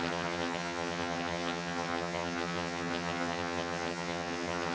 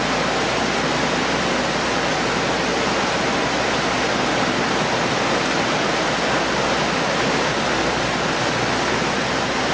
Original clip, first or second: second